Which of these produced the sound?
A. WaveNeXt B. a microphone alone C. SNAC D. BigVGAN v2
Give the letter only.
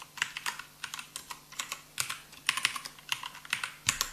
B